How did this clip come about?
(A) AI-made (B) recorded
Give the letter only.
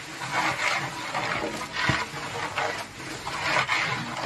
B